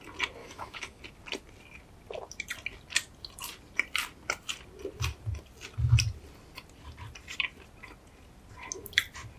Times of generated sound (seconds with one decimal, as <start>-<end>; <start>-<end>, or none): 0.4-1.0

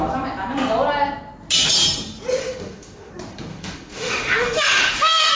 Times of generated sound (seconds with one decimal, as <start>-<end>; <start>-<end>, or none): 2.4-3.1; 3.5-5.3

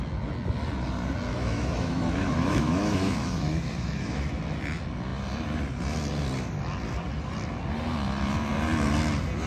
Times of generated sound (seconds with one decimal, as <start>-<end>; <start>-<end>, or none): 1.3-4.3

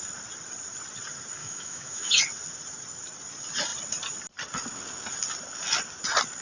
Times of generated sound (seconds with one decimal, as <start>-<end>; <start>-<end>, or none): 1.4-2.2

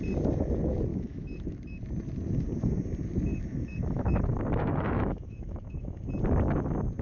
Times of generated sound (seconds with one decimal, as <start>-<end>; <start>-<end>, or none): 0.9-1.8; 3.3-6.1

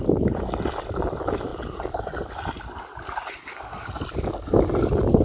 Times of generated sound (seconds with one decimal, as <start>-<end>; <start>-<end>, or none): none

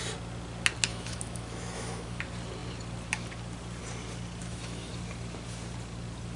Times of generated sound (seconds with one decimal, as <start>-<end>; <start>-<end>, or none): 0.9-2.2; 4.4-4.9